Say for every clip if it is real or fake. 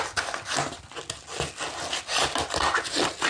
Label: real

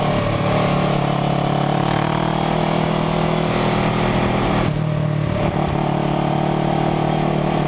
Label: real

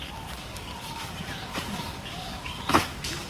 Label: fake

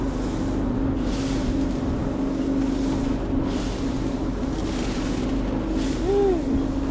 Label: real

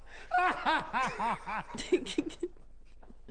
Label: real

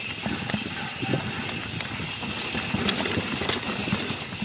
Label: real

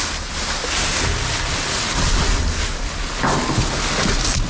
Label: real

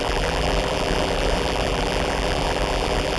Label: fake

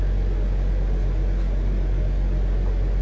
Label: real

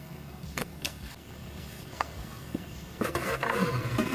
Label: fake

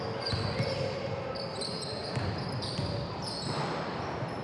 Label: real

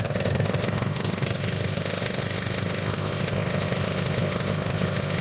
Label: fake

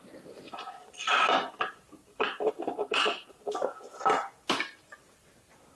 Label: real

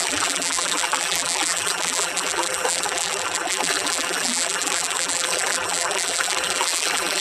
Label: fake